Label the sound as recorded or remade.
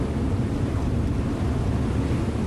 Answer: recorded